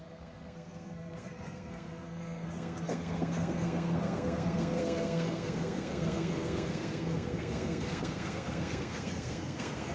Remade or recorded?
remade